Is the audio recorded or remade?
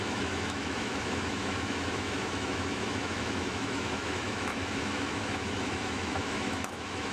remade